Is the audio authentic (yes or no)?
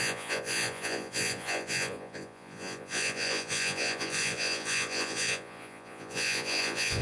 no